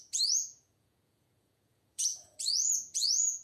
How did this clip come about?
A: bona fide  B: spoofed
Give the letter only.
B